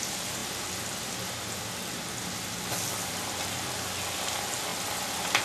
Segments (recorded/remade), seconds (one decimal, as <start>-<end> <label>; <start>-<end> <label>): 0.0-5.4 recorded